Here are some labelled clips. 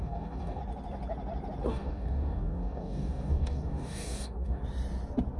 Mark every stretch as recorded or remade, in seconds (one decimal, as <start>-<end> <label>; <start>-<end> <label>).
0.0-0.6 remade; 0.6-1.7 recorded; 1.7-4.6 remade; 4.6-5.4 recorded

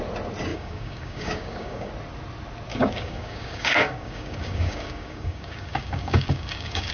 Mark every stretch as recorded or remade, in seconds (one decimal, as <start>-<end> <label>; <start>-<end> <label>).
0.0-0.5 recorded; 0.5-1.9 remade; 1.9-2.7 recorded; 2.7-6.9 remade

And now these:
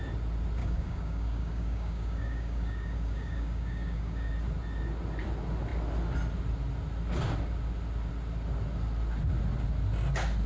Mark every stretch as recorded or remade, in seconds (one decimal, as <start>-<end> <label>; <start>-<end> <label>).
0.0-0.6 recorded; 0.6-4.3 remade; 4.3-10.5 recorded

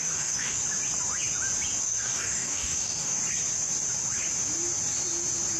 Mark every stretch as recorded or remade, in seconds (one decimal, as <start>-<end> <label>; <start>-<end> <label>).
0.0-0.6 remade; 0.6-1.8 recorded; 1.8-3.2 remade; 3.2-5.6 recorded

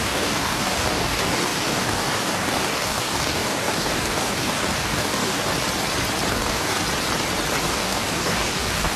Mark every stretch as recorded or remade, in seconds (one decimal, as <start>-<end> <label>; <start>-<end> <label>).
0.0-5.5 remade; 5.5-6.3 recorded; 6.3-6.8 remade; 6.8-7.7 recorded; 7.7-9.0 remade

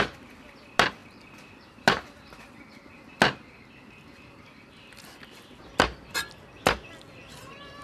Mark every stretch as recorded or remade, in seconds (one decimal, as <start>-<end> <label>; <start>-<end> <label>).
0.0-7.8 recorded

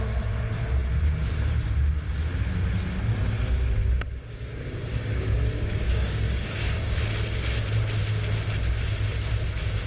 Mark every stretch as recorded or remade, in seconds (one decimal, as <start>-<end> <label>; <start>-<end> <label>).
0.0-3.8 recorded; 3.8-7.0 remade; 7.0-9.9 recorded